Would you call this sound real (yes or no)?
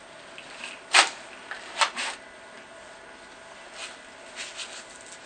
yes